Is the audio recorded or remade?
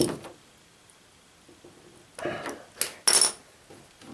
recorded